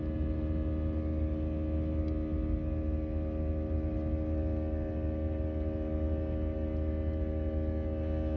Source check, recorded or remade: recorded